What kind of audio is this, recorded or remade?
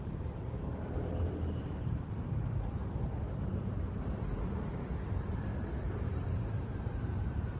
remade